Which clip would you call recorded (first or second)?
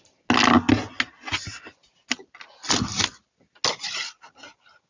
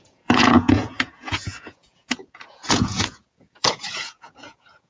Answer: first